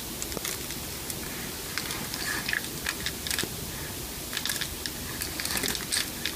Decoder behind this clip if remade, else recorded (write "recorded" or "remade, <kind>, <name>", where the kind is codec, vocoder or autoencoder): recorded